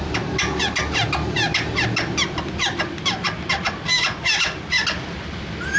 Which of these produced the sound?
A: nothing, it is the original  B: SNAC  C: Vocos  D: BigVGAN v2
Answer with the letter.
A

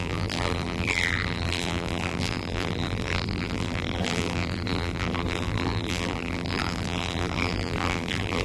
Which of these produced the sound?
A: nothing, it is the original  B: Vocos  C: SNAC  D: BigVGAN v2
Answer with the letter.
D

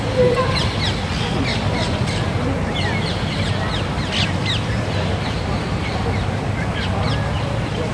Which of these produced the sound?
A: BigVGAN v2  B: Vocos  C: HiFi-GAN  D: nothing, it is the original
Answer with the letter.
D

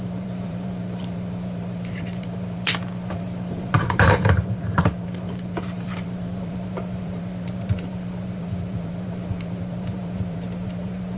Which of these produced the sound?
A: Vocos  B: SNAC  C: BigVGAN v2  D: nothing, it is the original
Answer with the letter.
C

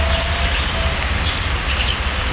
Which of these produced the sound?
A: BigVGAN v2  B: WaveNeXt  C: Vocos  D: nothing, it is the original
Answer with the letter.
D